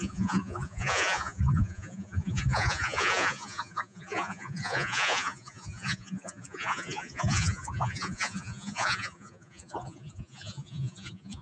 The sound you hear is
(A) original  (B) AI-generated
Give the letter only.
B